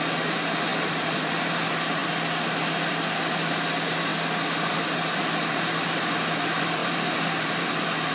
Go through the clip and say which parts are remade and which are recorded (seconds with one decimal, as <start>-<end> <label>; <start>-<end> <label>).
0.0-0.7 recorded; 0.7-1.6 remade; 1.6-6.8 recorded; 6.8-8.1 remade